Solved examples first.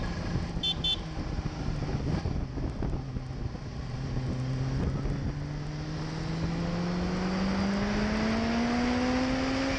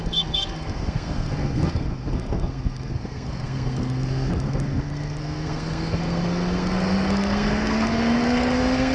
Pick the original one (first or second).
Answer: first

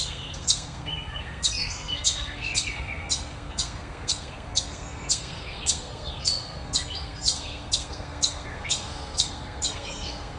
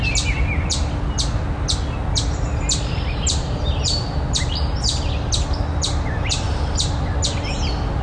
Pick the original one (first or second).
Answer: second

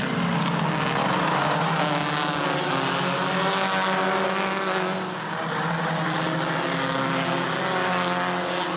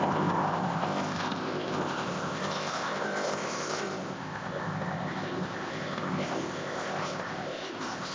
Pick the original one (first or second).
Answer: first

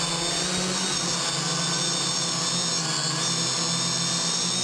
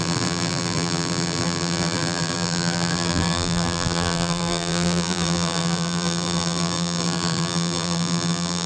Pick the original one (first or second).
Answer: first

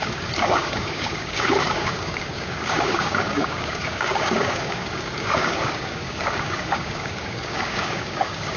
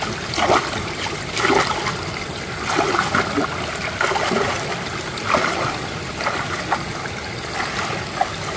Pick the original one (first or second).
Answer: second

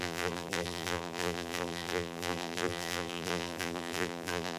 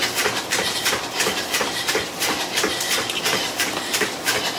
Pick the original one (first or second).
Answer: second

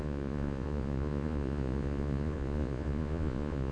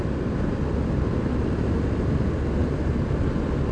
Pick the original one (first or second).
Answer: second